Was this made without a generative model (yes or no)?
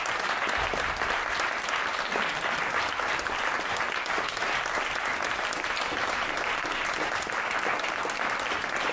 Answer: yes